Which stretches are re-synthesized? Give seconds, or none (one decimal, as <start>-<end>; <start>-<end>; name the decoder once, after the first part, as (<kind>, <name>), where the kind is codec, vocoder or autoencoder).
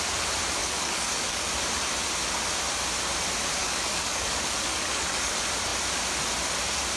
0.6-1.5 (codec, DAC); 3.6-5.3